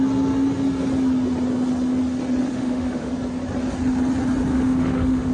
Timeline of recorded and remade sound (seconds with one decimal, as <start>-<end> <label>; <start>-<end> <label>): 0.0-2.5 recorded; 2.5-3.1 remade; 3.1-4.5 recorded; 4.5-5.3 remade